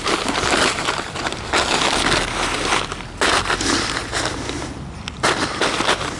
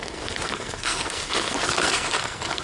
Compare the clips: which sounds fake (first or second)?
second